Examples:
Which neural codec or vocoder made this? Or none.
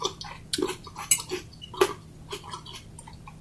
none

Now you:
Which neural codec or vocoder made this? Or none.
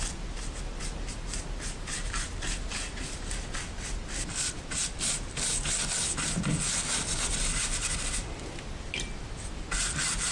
none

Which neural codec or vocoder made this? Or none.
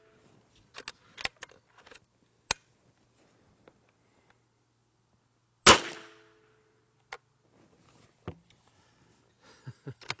none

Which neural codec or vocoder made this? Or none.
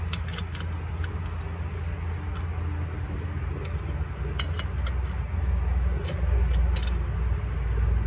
none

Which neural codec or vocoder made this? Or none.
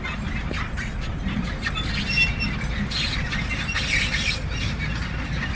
none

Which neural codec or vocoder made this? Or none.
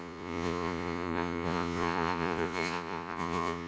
vocoder, Vocos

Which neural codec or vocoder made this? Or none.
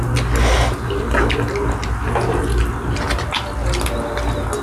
none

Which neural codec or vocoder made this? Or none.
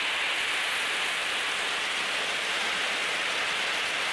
none